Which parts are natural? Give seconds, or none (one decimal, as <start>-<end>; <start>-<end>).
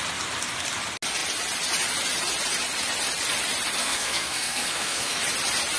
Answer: 0.0-3.8; 5.2-5.8